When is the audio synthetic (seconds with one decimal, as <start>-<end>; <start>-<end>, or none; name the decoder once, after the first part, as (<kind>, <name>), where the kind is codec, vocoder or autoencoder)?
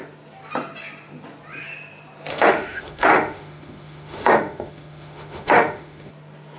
2.3-6.1 (autoencoder, DAC-VAE)